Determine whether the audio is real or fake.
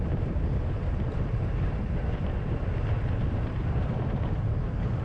fake